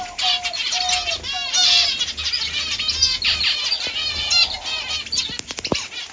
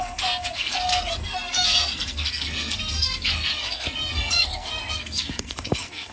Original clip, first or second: first